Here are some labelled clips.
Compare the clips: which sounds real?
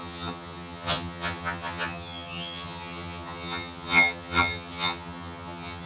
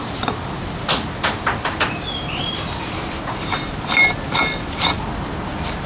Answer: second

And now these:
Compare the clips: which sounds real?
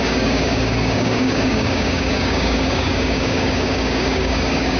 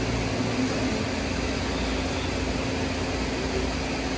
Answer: second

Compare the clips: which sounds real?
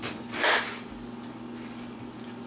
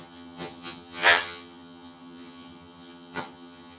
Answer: first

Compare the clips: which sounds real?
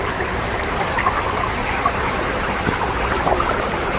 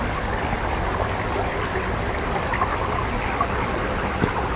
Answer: second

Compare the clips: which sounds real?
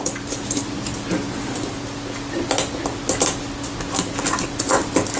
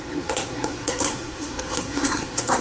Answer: first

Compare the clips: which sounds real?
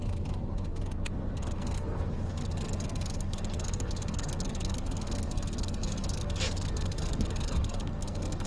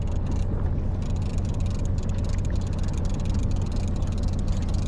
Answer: second